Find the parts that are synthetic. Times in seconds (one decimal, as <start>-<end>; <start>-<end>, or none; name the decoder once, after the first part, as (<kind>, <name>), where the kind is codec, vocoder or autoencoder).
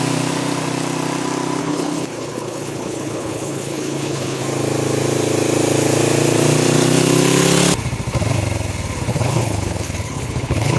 1.6-4.4 (codec, HILCodec); 9.1-10.8